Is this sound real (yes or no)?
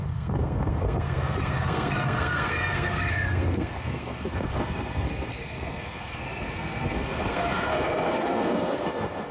no